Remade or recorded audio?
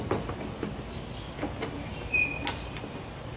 recorded